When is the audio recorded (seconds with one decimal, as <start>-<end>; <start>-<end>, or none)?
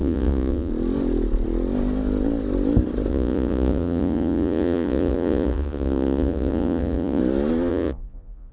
0.7-3.1; 7.2-7.7